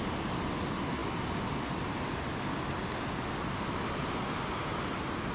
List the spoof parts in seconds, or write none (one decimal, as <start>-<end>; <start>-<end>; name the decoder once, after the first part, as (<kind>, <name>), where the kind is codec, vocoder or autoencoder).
none